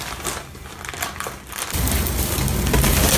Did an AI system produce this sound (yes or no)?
no